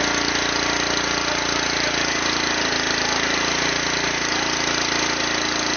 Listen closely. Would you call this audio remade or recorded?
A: recorded